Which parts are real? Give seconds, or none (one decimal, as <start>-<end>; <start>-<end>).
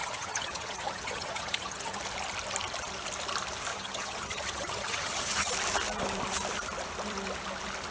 2.0-3.7; 5.5-7.9